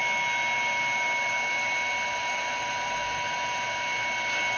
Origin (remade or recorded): recorded